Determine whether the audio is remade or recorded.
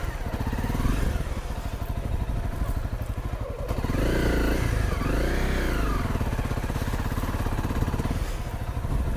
recorded